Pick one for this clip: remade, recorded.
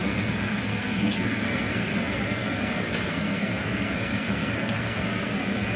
remade